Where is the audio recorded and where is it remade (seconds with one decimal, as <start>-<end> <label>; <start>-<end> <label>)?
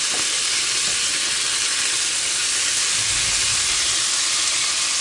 0.0-5.0 recorded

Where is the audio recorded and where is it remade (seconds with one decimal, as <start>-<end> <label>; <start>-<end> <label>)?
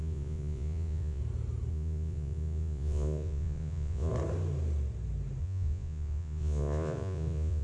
0.0-1.2 remade; 1.2-1.7 recorded; 1.7-4.1 remade; 4.1-5.4 recorded; 5.4-7.6 remade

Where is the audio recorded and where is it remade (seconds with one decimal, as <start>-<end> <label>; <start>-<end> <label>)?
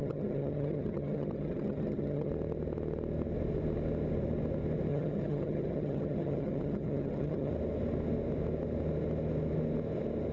0.0-2.3 remade; 2.3-4.9 recorded; 4.9-7.5 remade; 7.5-10.3 recorded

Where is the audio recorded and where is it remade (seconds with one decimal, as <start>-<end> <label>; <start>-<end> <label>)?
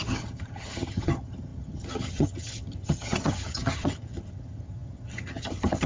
0.0-5.9 remade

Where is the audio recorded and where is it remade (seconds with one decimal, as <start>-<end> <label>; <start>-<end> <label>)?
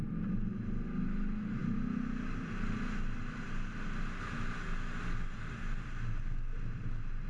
0.0-7.3 recorded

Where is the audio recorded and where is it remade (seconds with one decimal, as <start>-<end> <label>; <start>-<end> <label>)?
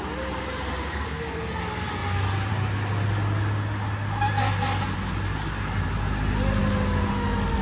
0.0-0.9 recorded; 0.9-1.6 remade; 1.6-7.6 recorded